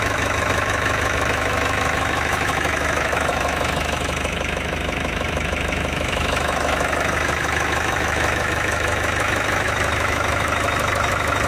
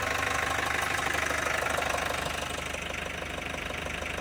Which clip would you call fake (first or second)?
first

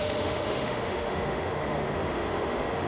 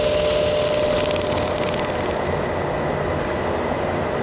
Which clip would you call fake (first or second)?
first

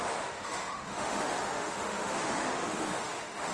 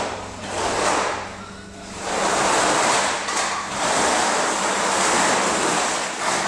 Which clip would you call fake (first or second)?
first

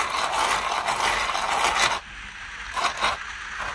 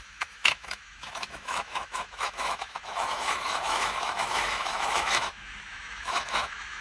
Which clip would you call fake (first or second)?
second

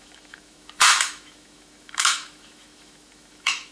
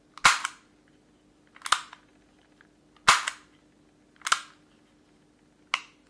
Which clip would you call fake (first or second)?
first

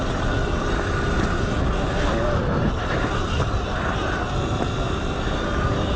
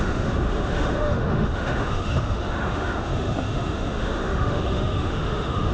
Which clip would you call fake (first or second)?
second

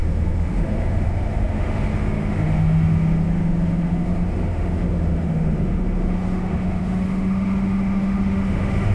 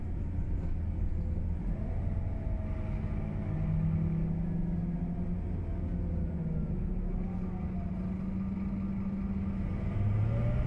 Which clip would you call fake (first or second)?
first